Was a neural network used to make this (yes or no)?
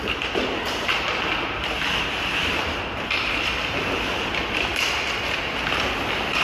no